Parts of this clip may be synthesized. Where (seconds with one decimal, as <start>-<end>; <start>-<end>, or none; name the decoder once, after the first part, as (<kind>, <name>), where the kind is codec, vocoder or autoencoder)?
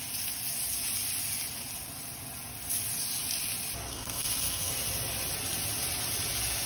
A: 3.9-4.7 (codec, SNAC)